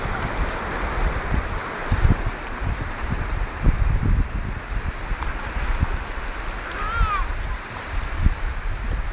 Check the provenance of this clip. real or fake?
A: real